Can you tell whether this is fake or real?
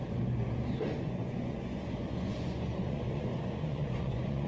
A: fake